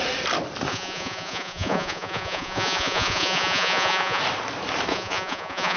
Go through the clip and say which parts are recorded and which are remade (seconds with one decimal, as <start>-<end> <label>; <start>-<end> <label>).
0.0-0.7 recorded; 0.7-4.2 remade; 4.2-4.9 recorded; 4.9-5.8 remade